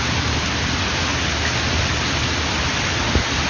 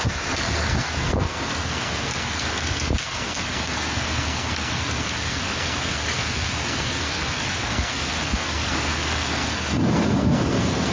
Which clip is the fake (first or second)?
second